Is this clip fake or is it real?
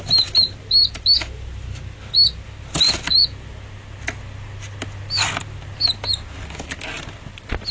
real